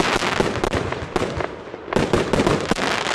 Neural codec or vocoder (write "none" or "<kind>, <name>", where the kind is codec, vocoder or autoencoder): none